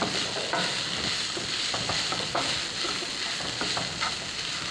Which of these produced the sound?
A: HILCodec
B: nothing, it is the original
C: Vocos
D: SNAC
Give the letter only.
B